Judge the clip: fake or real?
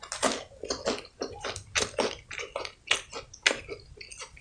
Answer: real